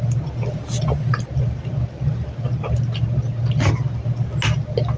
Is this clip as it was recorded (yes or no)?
yes